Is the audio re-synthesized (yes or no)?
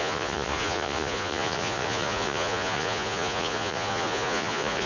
yes